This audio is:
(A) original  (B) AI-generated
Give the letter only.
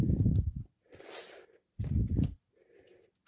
B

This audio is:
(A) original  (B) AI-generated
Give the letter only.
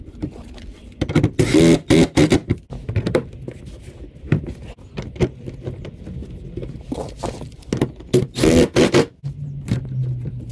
A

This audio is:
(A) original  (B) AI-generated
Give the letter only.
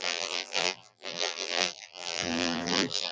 B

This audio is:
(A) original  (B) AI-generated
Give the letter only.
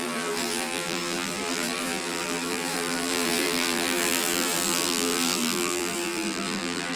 B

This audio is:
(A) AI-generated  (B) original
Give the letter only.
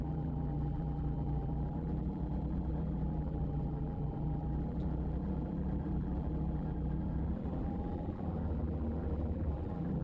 A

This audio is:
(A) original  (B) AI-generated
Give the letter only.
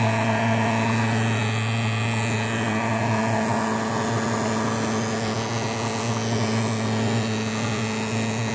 A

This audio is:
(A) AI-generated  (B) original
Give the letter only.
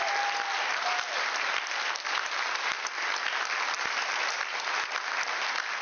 B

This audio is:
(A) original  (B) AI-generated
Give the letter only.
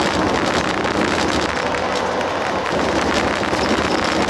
A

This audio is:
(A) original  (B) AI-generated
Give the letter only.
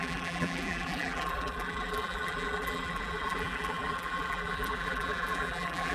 B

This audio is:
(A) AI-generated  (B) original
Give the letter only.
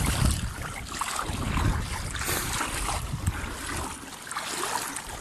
B